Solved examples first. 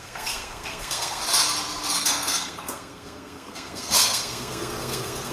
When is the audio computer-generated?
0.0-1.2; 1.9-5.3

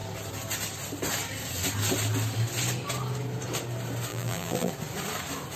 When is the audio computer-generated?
4.1-4.7

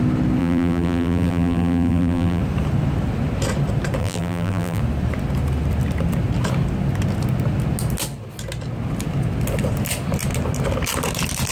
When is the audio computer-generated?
0.4-2.4; 4.0-4.8

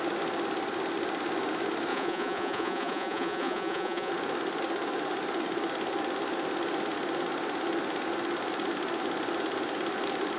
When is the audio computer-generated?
1.9-4.1

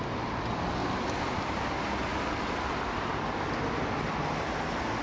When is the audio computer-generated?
0.8-1.4; 2.1-3.2